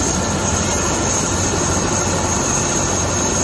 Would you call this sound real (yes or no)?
yes